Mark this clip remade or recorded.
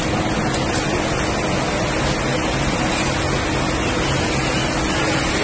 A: recorded